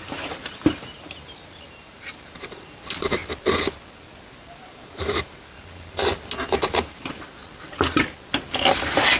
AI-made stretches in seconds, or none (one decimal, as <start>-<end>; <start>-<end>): 0.0-3.2; 4.3-6.0; 6.6-7.4